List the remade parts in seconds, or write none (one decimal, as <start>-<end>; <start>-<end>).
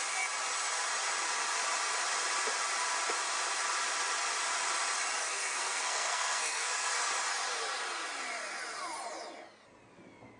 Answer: 5.2-7.1